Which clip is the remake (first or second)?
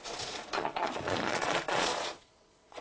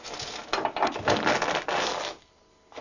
first